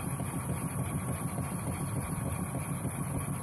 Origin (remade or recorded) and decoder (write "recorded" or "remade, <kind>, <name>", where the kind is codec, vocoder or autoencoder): recorded